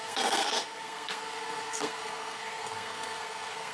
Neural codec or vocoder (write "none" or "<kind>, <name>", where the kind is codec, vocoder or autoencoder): codec, SNAC